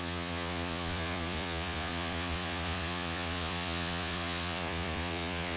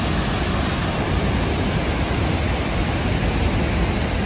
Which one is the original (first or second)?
second